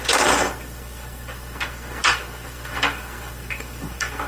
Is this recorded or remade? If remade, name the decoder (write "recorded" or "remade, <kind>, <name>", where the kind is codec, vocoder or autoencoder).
remade, codec, SNAC